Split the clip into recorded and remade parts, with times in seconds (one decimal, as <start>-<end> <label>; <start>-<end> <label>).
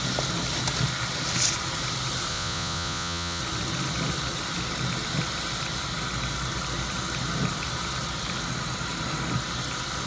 0.0-2.3 recorded; 2.3-3.4 remade; 3.4-10.1 recorded